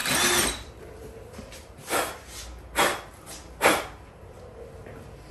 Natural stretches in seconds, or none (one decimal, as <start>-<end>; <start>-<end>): 0.0-5.3